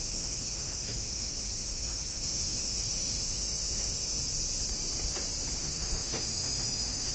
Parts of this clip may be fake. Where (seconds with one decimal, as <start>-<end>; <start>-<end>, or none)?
0.0-4.2; 5.6-7.1